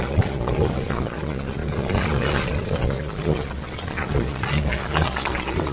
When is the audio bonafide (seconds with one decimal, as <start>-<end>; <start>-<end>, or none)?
none